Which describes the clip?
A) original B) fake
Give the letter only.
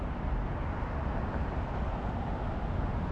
A